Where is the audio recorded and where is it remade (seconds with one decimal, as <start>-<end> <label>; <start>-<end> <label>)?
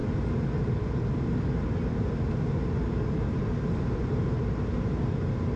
0.0-5.6 recorded